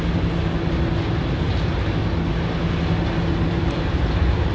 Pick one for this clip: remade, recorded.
recorded